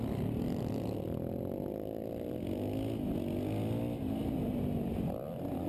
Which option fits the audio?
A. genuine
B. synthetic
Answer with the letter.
A